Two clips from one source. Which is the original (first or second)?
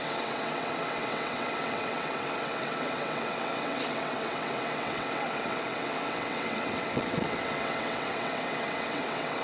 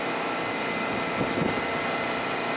second